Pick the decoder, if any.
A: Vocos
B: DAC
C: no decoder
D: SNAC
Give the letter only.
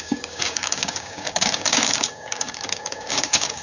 B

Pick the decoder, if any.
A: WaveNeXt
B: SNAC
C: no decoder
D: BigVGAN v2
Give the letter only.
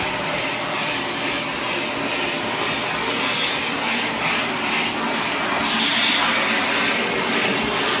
C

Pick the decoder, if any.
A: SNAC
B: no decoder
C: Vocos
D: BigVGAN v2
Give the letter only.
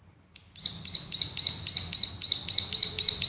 B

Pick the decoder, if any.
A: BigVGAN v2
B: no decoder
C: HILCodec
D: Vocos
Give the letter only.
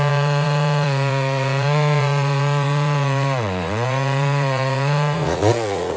D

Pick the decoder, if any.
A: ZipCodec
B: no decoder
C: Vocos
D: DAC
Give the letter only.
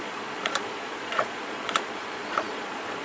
C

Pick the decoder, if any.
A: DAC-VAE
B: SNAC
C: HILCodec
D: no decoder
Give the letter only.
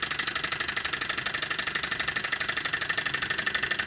D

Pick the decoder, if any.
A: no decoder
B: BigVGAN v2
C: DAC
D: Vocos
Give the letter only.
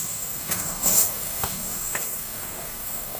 C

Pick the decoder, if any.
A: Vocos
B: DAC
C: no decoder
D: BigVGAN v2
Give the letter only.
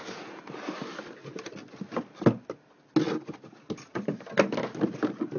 C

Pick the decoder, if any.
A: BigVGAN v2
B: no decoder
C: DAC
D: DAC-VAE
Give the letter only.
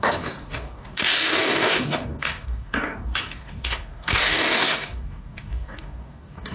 C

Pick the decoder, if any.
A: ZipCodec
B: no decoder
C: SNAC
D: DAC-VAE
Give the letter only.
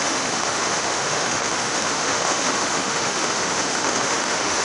D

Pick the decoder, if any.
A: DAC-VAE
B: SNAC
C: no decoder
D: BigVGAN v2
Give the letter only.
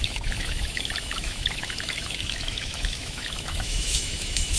A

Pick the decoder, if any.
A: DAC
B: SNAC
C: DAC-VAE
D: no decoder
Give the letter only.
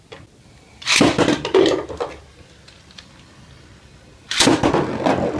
D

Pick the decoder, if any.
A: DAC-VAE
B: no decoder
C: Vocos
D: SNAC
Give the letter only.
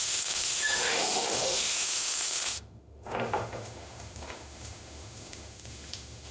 A